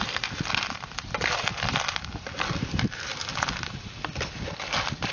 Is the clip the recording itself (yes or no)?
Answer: yes